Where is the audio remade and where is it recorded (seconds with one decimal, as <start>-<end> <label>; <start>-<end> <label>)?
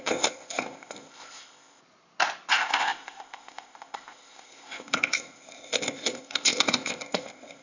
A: 0.0-1.8 remade; 1.8-2.5 recorded; 2.5-7.6 remade